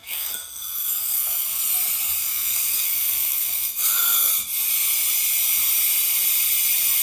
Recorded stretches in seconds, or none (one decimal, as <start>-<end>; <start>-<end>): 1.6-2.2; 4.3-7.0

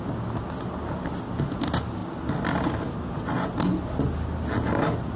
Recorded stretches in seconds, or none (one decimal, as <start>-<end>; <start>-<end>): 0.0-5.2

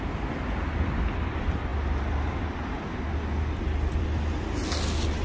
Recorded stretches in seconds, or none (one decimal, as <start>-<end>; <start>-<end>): 0.0-5.2

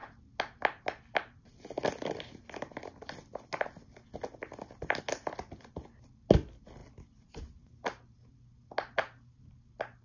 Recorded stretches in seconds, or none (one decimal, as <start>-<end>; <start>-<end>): 0.0-10.0

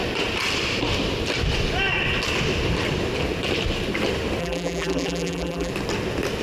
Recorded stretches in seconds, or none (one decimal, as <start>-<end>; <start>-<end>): 0.0-4.4; 5.7-6.4

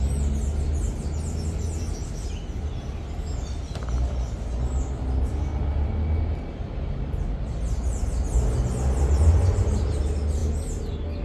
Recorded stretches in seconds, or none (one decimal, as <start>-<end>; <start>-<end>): 0.0-11.2

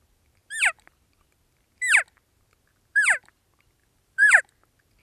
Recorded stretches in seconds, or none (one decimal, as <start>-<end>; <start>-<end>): 0.0-3.8; 4.4-5.0